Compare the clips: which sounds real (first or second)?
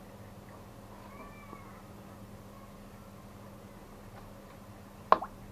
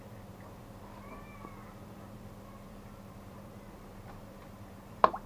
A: first